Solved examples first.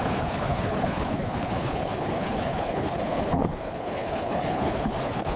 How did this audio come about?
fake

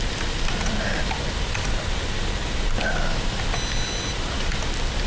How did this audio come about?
real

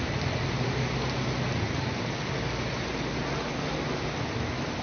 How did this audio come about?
real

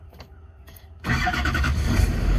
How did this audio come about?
fake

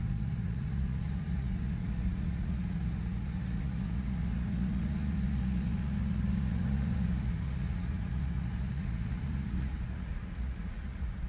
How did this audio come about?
fake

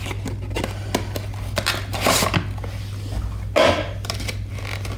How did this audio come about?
real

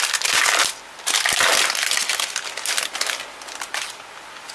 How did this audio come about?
real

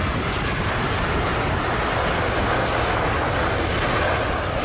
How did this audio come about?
real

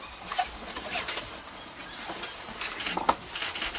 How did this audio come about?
real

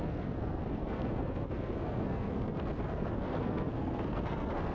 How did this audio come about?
fake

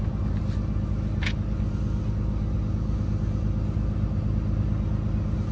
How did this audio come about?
real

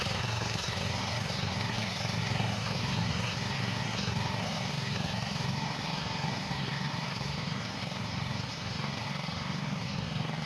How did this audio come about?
fake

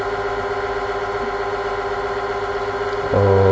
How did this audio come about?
real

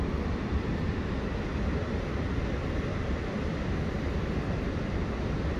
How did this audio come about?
real